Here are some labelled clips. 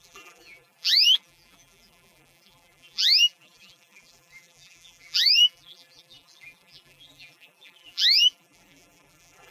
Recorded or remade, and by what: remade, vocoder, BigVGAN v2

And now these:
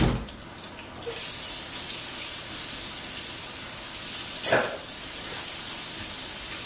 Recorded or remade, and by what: recorded